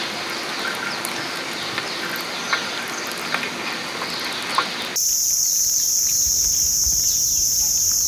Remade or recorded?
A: recorded